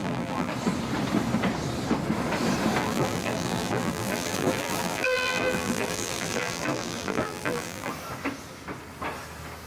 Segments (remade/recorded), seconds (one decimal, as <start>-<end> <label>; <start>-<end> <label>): 0.0-0.5 remade; 0.5-2.8 recorded; 2.8-7.9 remade; 7.9-9.7 recorded